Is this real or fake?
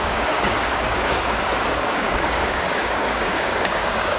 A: fake